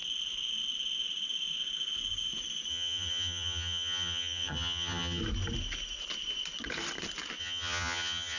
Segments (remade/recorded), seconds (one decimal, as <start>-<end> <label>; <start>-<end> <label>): 0.0-2.7 recorded; 2.7-5.2 remade; 5.2-7.4 recorded; 7.4-8.4 remade